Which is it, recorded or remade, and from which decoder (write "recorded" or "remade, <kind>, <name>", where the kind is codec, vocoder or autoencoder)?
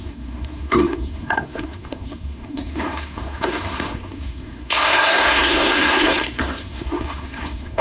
remade, codec, SNAC